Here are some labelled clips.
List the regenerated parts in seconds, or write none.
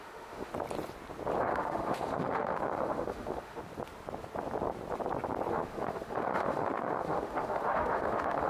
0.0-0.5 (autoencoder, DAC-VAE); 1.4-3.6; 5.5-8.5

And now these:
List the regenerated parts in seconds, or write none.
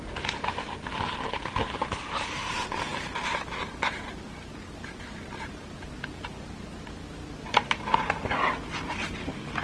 none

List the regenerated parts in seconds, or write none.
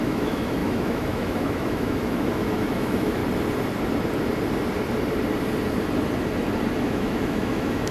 0.0-3.2 (autoencoder, DAC-VAE); 6.8-7.9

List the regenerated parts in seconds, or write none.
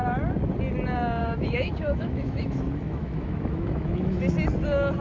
1.2-4.2 (autoencoder, DAC-VAE)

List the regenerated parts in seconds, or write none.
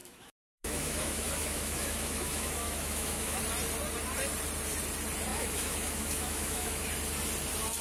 0.0-3.4 (autoencoder, DAC-VAE); 5.3-6.8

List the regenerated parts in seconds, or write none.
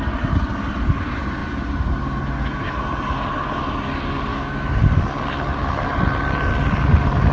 4.3-4.8 (autoencoder, DAC-VAE)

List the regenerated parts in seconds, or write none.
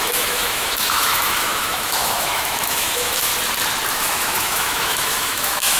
0.0-3.3 (autoencoder, DAC-VAE); 3.9-5.8